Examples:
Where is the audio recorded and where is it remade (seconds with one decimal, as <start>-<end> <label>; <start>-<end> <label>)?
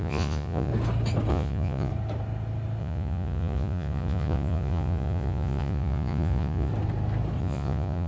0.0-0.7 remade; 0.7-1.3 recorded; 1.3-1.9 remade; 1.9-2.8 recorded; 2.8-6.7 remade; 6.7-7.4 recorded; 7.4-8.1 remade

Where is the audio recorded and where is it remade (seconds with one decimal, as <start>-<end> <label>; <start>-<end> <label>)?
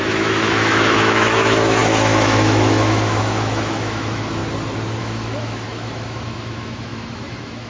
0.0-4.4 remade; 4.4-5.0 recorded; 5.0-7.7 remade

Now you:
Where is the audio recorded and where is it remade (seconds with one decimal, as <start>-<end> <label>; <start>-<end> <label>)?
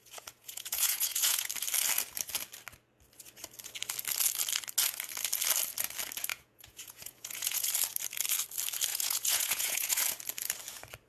0.0-1.5 remade; 1.5-6.3 recorded; 6.3-7.7 remade; 7.7-8.9 recorded; 8.9-10.0 remade; 10.0-11.1 recorded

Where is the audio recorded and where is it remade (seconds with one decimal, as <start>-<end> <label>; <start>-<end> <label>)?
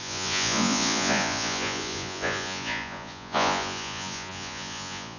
0.0-5.2 remade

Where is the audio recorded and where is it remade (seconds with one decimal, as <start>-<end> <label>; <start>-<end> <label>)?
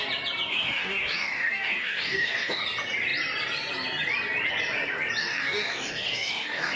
0.0-0.5 recorded; 0.5-2.6 remade; 2.6-5.2 recorded; 5.2-6.8 remade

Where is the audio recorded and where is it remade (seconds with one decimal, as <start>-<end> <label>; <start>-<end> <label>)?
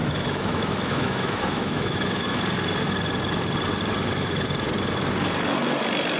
0.0-2.4 remade; 2.4-6.2 recorded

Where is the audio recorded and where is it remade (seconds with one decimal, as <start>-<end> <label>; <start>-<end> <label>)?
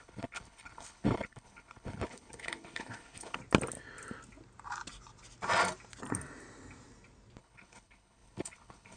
0.0-3.4 remade; 3.4-7.4 recorded; 7.4-9.0 remade